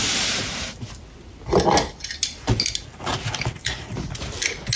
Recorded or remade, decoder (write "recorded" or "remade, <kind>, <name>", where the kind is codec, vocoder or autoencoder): recorded